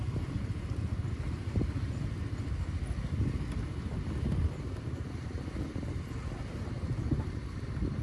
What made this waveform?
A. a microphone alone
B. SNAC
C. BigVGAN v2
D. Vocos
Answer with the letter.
A